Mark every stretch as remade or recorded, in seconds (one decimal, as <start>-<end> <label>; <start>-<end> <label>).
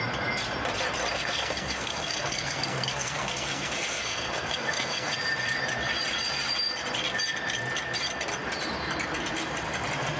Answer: 0.0-1.1 recorded; 1.1-5.2 remade; 5.2-10.2 recorded